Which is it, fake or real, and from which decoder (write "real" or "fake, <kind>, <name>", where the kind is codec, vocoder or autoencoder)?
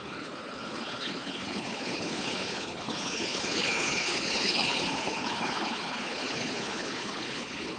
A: fake, codec, HILCodec